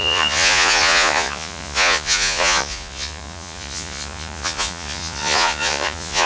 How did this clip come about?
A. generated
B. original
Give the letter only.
A